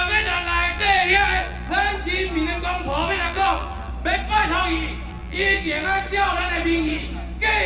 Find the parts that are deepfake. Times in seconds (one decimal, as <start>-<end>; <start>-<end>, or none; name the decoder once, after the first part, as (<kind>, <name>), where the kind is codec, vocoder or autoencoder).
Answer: 0.0-1.7 (vocoder, BigVGAN v2); 2.9-3.9; 5.1-6.0